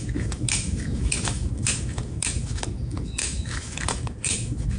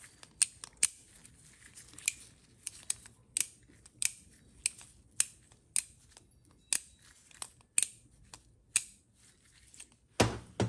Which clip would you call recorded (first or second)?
second